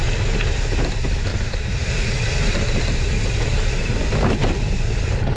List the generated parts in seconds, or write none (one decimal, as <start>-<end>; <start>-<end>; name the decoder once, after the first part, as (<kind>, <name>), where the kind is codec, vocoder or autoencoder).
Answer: 1.3-1.9 (vocoder, BigVGAN v2); 3.5-4.0